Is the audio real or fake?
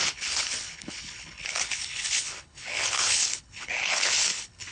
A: fake